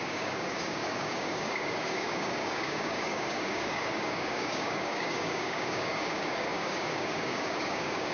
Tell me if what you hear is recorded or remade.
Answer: remade